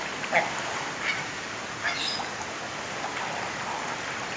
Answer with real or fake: real